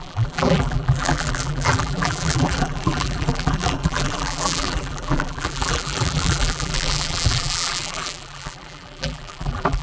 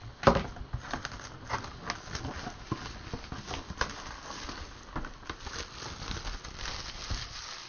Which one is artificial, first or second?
first